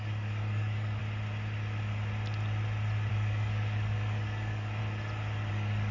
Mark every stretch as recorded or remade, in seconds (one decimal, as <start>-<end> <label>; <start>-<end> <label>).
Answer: 0.0-1.0 remade; 1.0-3.1 recorded; 3.1-4.8 remade; 4.8-5.5 recorded; 5.5-5.9 remade

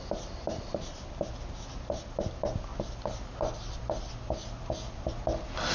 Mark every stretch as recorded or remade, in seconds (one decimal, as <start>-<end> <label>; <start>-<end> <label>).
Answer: 0.0-5.7 recorded

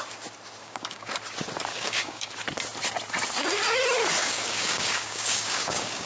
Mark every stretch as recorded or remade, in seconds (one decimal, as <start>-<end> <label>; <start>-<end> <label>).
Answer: 0.0-0.6 recorded; 0.6-1.1 remade; 1.1-1.7 recorded; 1.7-2.3 remade; 2.3-4.2 recorded; 4.2-6.1 remade

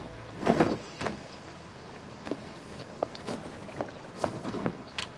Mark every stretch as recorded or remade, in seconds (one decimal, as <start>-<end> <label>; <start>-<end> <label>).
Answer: 0.0-3.3 remade; 3.3-4.1 recorded; 4.1-5.2 remade

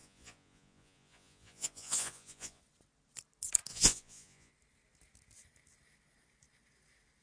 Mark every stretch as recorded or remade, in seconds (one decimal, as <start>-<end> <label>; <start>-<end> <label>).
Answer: 0.0-2.6 remade; 2.6-3.7 recorded; 3.7-4.5 remade; 4.5-7.2 recorded